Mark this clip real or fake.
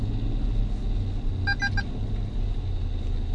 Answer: real